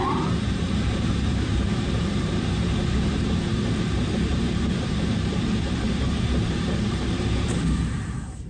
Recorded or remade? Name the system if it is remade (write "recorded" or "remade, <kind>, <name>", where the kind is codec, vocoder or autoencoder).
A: remade, vocoder, BigVGAN v2